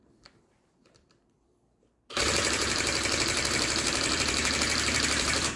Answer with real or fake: fake